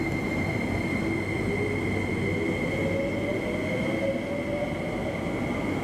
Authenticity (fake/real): real